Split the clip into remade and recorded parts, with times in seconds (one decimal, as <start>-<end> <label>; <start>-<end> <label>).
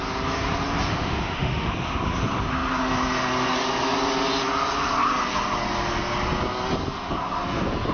0.0-0.9 recorded; 0.9-1.7 remade; 1.7-7.9 recorded